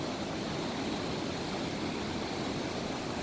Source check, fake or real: real